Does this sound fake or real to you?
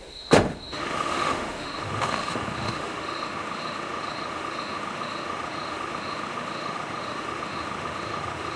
fake